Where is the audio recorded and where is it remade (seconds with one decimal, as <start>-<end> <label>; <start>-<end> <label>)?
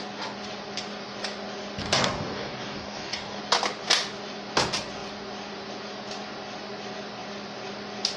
0.0-1.8 recorded; 1.8-3.4 remade; 3.4-8.2 recorded